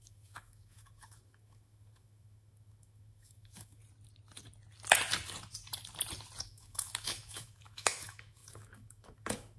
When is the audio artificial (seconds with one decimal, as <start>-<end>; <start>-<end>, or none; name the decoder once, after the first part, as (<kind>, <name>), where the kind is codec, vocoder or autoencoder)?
0.0-3.8 (autoencoder, DAC-VAE); 6.4-9.6